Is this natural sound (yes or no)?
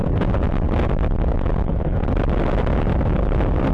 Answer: yes